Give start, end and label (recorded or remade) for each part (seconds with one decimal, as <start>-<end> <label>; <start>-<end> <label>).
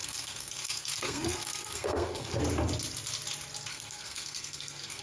0.0-2.4 remade; 2.4-3.7 recorded; 3.7-5.0 remade